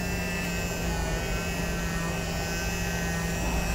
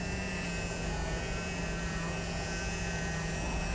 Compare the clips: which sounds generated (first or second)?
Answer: second